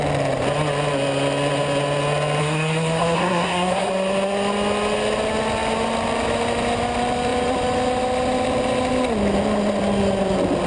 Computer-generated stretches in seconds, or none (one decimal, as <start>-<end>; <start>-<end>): 2.4-3.9

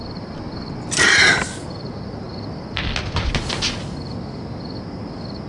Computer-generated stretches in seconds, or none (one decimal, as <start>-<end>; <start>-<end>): none

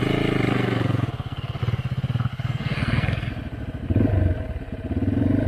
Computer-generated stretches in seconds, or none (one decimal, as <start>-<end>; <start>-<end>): 0.5-1.6; 2.3-3.3

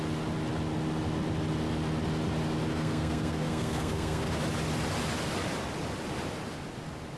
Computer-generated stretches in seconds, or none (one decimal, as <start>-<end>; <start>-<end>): 2.7-4.2

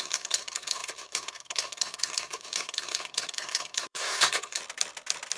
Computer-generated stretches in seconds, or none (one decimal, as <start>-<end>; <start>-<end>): 0.0-4.6